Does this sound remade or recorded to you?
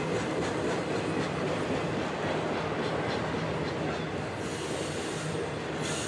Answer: recorded